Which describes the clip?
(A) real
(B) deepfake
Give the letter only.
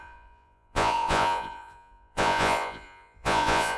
B